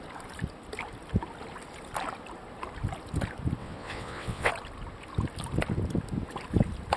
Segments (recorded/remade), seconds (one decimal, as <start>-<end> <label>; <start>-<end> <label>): 0.0-3.6 recorded; 3.6-4.5 remade; 4.5-7.0 recorded